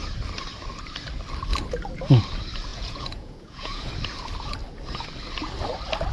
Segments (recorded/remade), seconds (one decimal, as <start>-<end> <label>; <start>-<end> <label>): 0.0-2.7 recorded; 2.7-3.9 remade; 3.9-6.1 recorded